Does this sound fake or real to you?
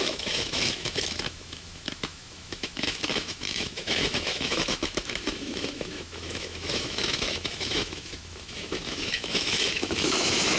fake